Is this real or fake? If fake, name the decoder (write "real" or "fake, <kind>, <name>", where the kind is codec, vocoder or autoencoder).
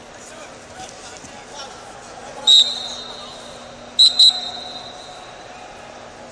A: real